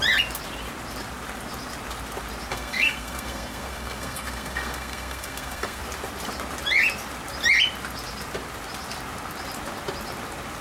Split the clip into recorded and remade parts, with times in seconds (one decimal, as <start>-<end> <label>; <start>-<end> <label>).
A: 0.0-2.5 recorded; 2.5-5.8 remade; 5.8-10.6 recorded